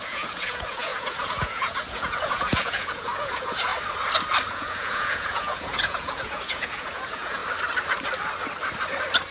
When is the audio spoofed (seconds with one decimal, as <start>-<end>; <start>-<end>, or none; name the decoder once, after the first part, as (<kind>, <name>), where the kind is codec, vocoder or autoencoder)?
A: 0.0-3.7 (vocoder, Vocos); 4.5-7.4